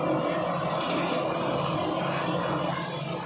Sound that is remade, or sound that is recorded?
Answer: recorded